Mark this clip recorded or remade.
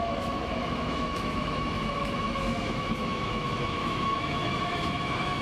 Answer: remade